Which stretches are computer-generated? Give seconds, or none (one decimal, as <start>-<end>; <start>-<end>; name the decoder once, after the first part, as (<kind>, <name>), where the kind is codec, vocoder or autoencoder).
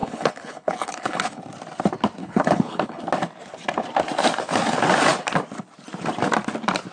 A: 0.0-1.4 (codec, HILCodec); 2.2-3.0